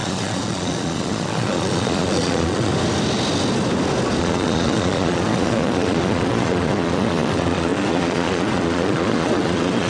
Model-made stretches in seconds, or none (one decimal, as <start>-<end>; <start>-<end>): 0.0-2.7; 4.2-9.9